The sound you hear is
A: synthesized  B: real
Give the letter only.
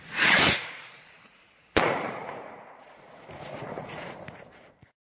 A